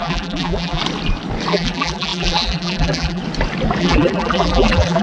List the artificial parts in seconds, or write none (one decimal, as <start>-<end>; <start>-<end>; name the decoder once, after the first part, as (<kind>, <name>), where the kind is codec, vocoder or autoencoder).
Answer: 0.0-0.8 (vocoder, BigVGAN v2); 1.5-3.2; 3.8-5.0